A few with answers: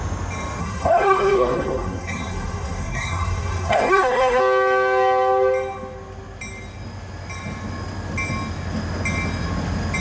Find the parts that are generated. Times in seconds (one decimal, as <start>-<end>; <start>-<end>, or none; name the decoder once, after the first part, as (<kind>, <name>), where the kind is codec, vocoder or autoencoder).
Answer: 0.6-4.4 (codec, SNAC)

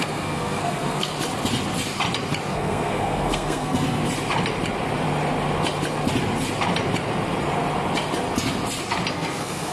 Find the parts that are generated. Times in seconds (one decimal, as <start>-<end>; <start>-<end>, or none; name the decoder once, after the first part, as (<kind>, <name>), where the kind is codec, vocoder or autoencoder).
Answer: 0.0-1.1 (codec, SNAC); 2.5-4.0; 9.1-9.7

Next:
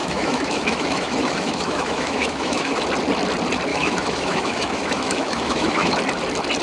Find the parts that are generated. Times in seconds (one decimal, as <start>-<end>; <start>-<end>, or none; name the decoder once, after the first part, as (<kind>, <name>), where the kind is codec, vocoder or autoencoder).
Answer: 0.0-2.8 (autoencoder, DAC-VAE); 3.7-5.9